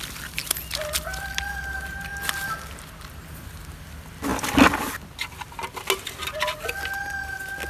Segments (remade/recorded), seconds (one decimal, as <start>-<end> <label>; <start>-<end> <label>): 0.0-7.7 recorded